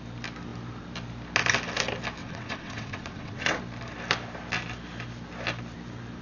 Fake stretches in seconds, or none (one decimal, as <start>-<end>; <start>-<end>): 2.2-3.6